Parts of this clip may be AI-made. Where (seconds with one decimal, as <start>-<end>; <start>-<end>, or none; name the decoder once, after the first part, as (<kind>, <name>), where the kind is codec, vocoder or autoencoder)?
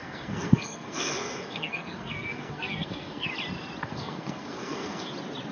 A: 0.0-3.3 (codec, SNAC); 3.8-5.1